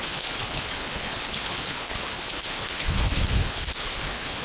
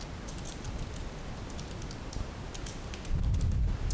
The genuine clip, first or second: second